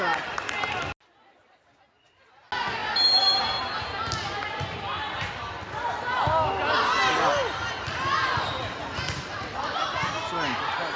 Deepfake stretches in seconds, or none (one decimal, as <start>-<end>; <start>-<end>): none